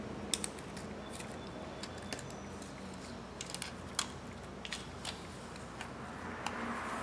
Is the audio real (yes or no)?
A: yes